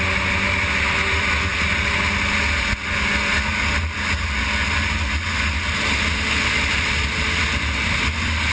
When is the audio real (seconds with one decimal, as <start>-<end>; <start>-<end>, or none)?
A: 0.0-8.5